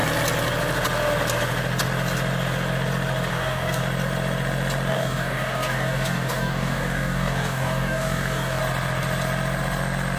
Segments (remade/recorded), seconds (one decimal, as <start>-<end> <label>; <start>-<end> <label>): 0.0-3.3 recorded; 3.3-3.8 remade; 3.8-4.9 recorded; 4.9-8.6 remade; 8.6-10.2 recorded